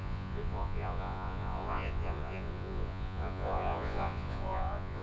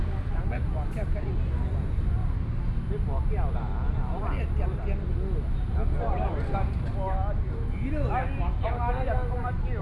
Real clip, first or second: second